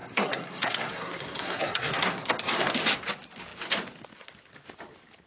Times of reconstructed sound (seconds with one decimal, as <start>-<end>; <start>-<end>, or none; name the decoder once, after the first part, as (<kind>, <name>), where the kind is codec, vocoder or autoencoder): 0.0-2.7 (codec, SNAC)